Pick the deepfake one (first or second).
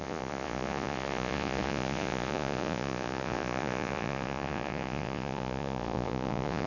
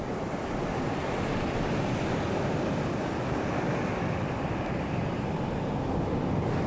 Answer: first